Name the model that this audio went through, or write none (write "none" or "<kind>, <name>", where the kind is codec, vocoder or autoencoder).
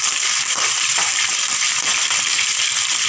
vocoder, BigVGAN v2